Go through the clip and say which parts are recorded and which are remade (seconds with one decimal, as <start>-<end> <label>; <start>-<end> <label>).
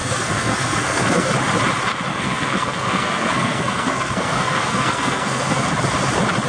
0.0-1.3 remade; 1.3-2.1 recorded; 2.1-5.7 remade; 5.7-6.5 recorded